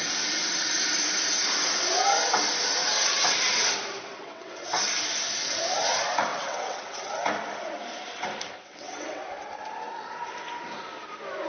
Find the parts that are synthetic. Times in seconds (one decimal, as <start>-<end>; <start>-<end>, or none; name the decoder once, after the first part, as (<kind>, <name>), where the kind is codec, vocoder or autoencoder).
2.9-3.4 (vocoder, WaveNeXt); 4.2-4.7; 6.3-7.1; 8.7-9.2